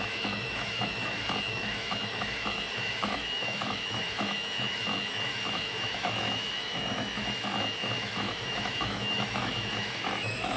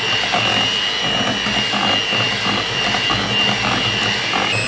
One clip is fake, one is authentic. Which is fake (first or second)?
first